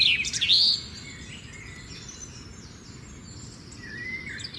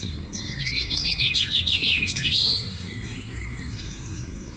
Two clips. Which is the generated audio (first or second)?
second